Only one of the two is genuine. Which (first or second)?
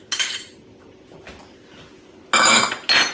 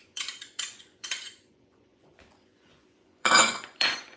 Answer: first